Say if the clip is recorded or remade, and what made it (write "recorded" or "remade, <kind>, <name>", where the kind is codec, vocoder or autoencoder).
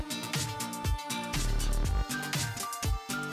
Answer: recorded